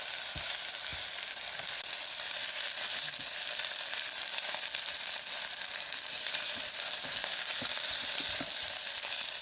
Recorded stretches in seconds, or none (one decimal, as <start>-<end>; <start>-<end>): none